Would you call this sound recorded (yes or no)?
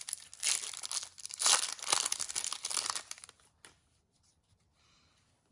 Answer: yes